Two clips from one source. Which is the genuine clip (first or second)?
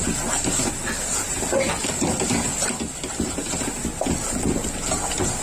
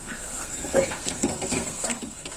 first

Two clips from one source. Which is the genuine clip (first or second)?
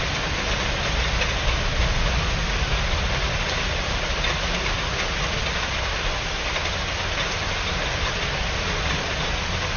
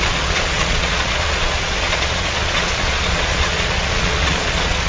first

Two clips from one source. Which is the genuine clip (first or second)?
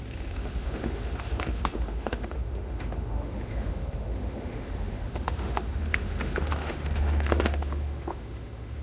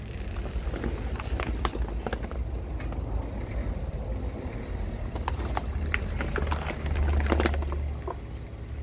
second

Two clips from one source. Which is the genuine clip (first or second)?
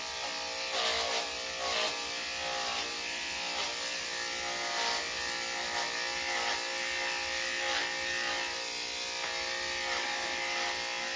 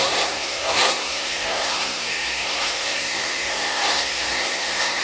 first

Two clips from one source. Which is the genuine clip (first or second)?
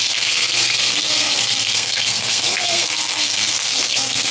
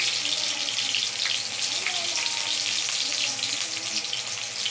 second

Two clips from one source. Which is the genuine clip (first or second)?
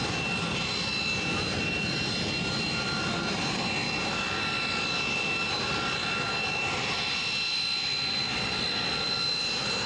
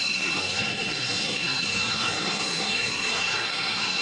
first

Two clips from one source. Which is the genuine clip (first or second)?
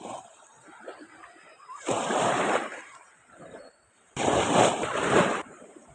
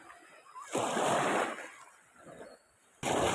second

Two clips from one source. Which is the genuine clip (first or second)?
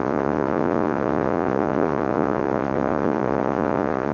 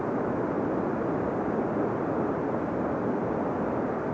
second